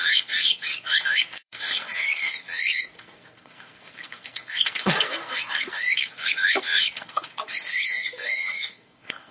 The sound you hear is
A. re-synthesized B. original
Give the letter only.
A